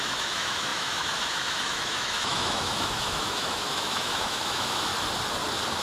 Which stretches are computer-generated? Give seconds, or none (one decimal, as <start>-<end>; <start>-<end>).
0.0-4.9